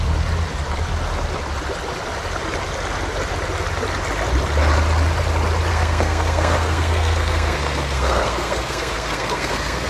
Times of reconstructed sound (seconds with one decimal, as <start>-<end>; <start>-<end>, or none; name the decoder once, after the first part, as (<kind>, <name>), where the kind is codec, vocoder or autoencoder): 5.7-9.9 (codec, SNAC)